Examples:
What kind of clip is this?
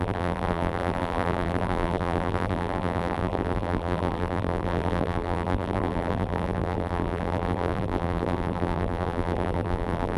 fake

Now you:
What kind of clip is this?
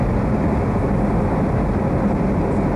real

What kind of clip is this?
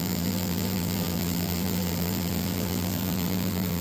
fake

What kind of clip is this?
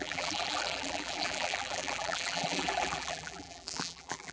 fake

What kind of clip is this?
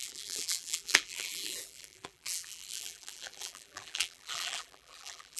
fake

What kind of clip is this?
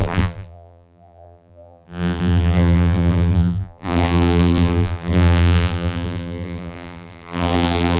fake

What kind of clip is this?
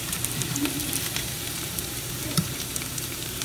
fake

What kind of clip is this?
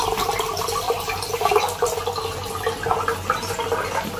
real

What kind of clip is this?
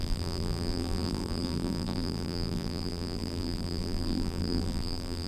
fake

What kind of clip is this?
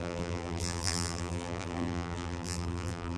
fake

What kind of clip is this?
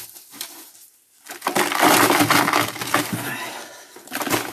real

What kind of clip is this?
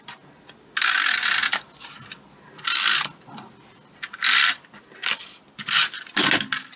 real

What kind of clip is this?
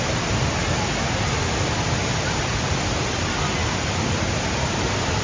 real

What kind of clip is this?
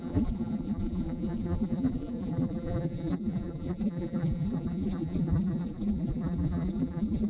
fake